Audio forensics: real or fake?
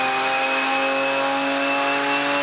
real